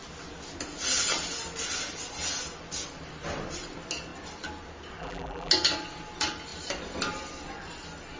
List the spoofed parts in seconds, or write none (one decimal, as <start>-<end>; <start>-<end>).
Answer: 5.0-5.5